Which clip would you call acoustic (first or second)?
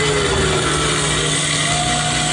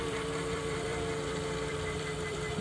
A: first